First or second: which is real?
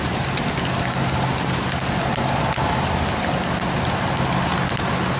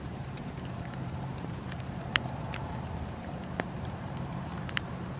first